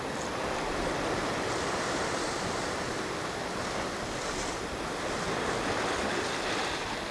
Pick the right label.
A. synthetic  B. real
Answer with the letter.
B